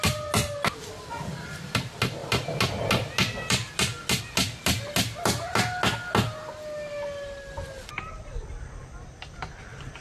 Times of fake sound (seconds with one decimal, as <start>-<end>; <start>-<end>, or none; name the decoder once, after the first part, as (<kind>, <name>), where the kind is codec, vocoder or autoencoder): none

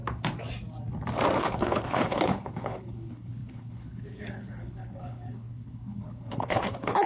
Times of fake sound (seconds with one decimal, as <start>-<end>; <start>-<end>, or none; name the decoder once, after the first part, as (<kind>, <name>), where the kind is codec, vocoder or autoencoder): 1.4-7.1 (codec, HILCodec)

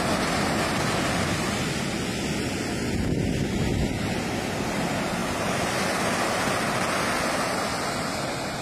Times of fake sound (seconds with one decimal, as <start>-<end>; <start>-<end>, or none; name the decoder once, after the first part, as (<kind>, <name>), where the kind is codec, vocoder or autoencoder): none

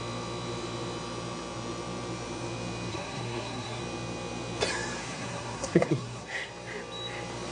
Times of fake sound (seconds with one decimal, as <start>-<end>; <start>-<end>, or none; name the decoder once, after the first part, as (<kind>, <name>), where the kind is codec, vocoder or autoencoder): 2.9-3.8 (codec, SNAC); 5.0-6.5

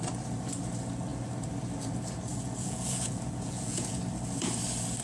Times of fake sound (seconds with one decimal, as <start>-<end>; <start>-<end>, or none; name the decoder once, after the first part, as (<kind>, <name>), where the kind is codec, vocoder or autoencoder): 2.3-4.0 (vocoder, Vocos)

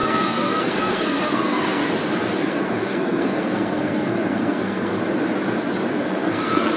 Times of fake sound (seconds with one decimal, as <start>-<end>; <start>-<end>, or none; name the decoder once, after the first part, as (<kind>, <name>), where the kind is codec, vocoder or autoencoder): 0.0-1.8 (codec, SNAC); 2.4-4.9; 5.9-6.8

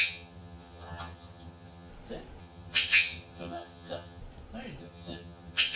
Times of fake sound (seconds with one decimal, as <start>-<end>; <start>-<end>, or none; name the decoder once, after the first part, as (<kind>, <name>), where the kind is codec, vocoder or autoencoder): 0.0-1.9 (vocoder, HiFi-GAN); 2.4-4.2; 4.8-5.8

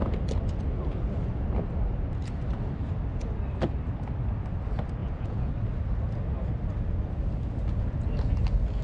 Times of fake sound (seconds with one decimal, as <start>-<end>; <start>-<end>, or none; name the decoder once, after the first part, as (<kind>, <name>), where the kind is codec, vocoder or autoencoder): 5.0-5.5 (vocoder, Vocos)